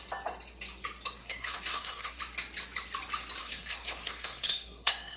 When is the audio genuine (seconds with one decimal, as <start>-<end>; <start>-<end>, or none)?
0.0-1.2; 2.2-3.4